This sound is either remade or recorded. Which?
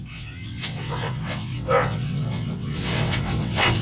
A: remade